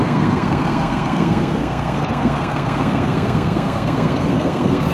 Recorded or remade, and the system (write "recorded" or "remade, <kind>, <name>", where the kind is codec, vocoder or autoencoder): remade, codec, SNAC